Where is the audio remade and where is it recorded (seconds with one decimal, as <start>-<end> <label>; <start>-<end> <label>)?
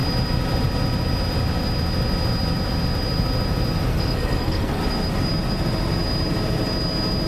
0.0-3.9 recorded; 3.9-4.8 remade; 4.8-7.3 recorded